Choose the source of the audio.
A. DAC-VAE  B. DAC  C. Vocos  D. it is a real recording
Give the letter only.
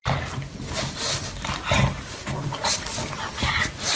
D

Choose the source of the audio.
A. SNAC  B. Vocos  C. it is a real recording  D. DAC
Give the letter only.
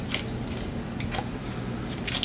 C